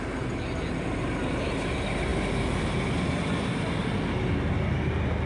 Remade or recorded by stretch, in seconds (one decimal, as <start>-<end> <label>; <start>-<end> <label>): 0.0-5.3 recorded